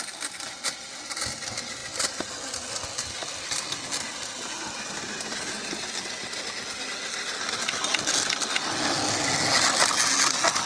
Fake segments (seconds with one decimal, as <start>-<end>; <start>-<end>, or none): 1.8-2.3; 3.2-5.4